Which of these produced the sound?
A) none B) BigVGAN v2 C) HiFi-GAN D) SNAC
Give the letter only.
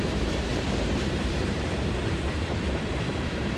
B